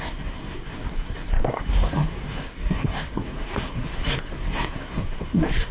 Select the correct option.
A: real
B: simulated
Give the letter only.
B